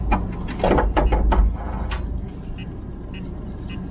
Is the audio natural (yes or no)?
yes